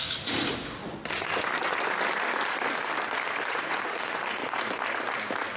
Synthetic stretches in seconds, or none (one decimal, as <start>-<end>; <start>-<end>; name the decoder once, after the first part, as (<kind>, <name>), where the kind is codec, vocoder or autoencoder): 0.0-0.8 (vocoder, Vocos); 3.5-4.4